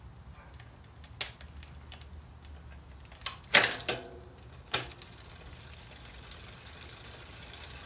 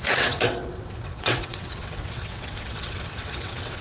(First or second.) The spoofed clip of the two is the second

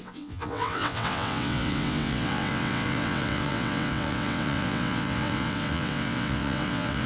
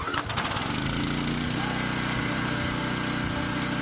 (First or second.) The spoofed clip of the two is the first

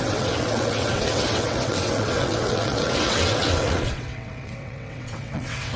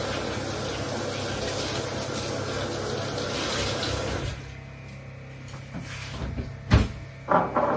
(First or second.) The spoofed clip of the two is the first